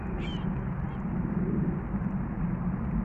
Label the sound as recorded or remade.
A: remade